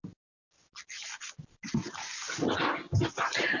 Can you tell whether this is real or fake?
real